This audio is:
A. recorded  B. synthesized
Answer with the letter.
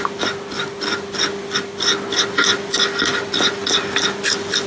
A